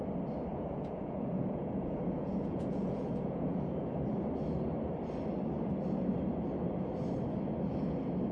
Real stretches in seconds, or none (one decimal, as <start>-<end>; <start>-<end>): 0.0-0.5; 3.8-8.3